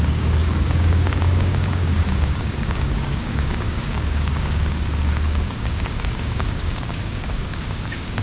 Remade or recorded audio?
remade